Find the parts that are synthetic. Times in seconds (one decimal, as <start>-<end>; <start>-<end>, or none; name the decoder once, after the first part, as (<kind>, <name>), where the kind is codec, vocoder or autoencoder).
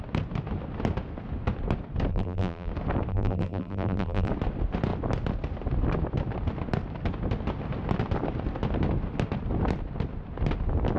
2.1-2.7 (vocoder, BigVGAN v2); 3.1-4.3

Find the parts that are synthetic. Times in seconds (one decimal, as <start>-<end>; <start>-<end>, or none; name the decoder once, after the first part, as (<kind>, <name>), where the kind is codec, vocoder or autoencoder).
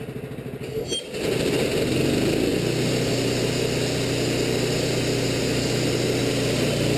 none